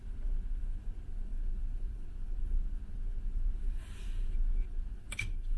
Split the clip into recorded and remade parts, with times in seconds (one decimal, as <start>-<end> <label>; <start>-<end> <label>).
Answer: 0.0-5.6 recorded